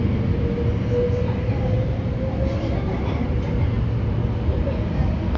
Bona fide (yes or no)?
yes